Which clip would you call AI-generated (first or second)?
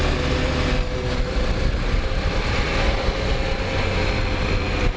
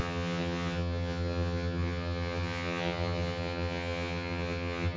second